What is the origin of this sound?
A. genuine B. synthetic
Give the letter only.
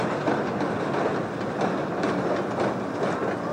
A